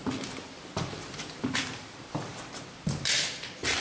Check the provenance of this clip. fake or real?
fake